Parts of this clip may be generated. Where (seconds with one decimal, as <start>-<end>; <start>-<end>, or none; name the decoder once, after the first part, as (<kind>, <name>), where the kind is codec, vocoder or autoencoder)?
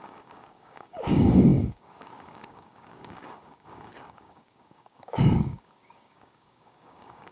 0.0-7.3 (codec, DAC)